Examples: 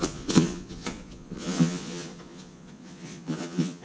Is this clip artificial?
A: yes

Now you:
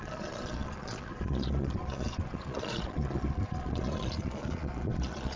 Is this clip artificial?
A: yes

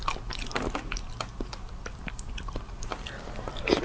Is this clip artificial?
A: no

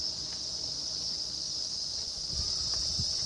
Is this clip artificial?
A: yes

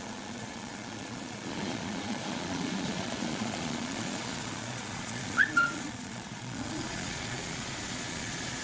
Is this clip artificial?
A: yes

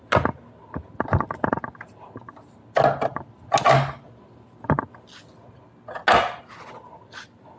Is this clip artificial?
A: no